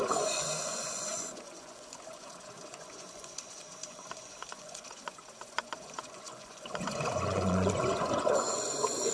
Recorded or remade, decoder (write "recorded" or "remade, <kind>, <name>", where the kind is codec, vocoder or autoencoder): remade, vocoder, Vocos